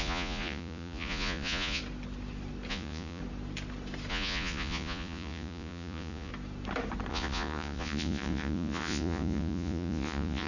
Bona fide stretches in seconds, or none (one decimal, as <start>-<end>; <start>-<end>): 1.8-2.7; 3.2-4.1; 6.3-7.1

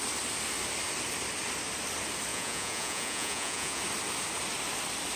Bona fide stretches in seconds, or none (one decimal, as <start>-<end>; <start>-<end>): 0.0-2.3; 3.8-5.2